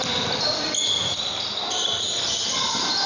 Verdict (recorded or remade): recorded